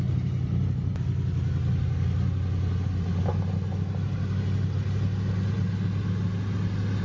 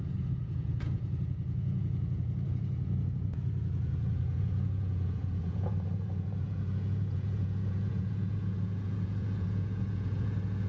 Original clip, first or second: first